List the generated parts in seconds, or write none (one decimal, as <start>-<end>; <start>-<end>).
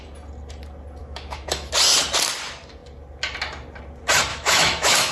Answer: 1.0-1.7; 4.3-5.1